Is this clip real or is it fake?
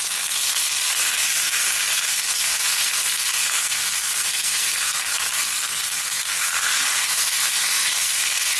fake